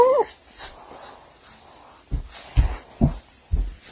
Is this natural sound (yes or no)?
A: yes